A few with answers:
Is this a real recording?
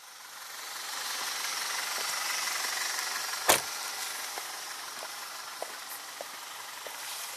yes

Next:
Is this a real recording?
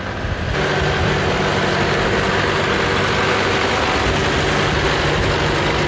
yes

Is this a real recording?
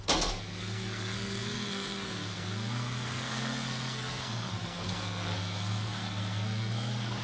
no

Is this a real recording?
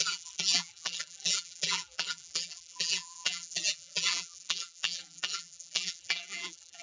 no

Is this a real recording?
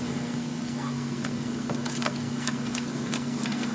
no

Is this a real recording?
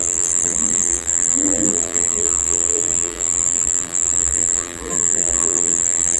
no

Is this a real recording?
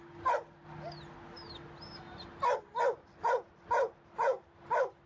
yes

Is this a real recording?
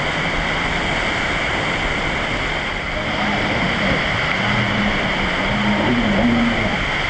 yes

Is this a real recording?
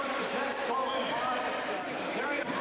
yes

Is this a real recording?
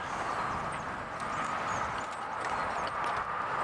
yes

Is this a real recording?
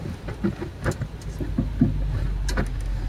yes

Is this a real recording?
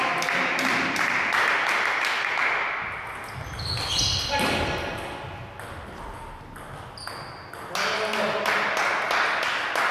yes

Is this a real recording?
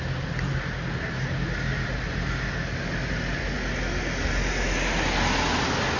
yes